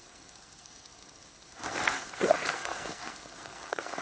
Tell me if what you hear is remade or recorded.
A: remade